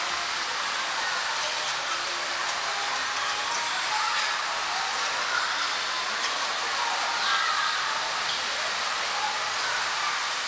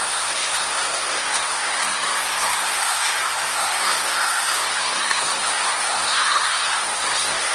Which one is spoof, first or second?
second